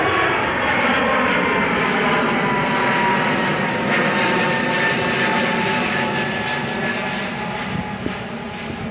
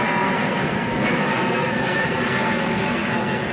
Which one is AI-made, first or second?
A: second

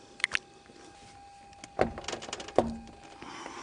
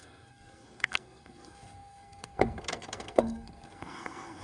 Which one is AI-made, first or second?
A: second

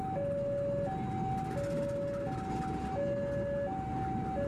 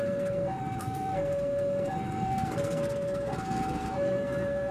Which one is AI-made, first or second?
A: second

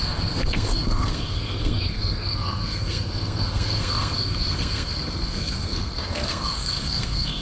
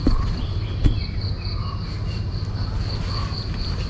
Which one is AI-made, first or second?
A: first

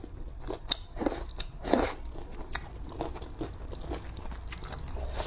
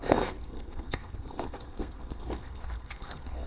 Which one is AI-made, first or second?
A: second